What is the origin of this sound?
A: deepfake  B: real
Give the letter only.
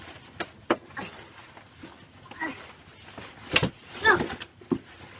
B